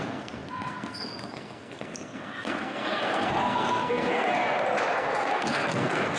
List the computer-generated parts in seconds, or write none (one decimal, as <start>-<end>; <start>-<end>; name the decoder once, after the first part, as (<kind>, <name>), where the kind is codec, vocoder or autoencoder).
0.0-4.3 (codec, SNAC); 4.9-6.2